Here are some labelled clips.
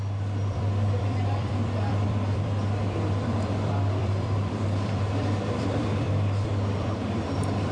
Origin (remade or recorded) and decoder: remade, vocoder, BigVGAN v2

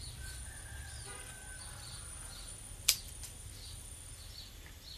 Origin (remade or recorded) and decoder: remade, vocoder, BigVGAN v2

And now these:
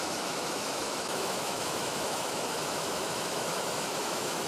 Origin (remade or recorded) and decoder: remade, autoencoder, DAC-VAE